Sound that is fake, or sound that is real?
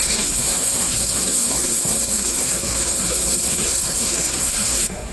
fake